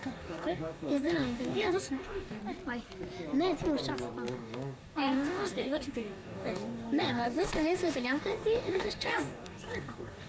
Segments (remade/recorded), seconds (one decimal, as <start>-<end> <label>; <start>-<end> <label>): 0.0-2.4 remade; 2.4-4.3 recorded; 4.3-10.3 remade